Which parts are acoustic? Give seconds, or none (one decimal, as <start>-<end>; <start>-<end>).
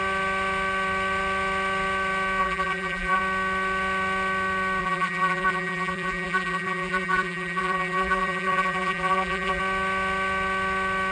0.0-2.4; 3.2-4.8; 9.6-11.1